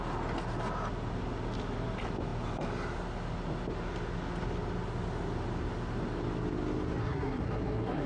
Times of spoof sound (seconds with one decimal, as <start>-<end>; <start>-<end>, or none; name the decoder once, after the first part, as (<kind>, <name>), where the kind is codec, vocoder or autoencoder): 7.0-8.1 (codec, SNAC)